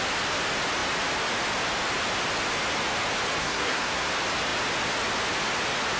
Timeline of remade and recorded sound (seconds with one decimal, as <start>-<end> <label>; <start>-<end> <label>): 0.0-3.4 recorded; 3.4-4.1 remade; 4.1-6.0 recorded